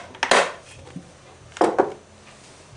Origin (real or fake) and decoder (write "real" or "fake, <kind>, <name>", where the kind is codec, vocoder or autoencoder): real